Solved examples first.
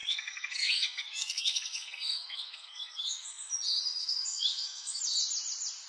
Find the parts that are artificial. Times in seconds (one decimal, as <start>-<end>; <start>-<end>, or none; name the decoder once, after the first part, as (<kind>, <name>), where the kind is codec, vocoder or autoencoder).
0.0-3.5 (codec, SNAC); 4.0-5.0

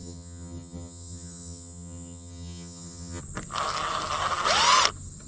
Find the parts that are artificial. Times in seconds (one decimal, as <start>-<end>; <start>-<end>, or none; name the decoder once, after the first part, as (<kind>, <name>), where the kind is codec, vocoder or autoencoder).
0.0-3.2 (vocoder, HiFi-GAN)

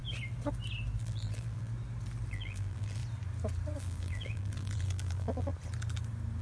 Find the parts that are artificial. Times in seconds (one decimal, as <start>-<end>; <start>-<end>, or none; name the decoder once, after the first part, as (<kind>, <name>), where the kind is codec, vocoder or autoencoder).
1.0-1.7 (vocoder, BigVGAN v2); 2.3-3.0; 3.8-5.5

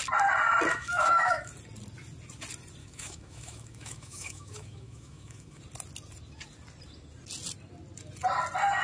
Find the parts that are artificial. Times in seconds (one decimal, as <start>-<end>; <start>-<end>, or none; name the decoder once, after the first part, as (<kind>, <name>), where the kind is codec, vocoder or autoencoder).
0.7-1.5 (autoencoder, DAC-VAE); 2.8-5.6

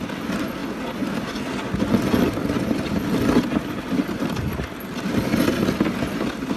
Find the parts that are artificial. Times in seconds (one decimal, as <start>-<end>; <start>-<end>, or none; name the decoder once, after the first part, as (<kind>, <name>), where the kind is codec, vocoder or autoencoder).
none

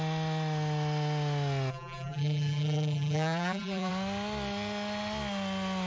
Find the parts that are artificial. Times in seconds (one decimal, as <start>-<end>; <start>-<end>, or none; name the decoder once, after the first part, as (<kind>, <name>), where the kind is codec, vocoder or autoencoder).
1.7-3.9 (vocoder, BigVGAN v2)